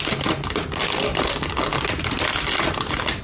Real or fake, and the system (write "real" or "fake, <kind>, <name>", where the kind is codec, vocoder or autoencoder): real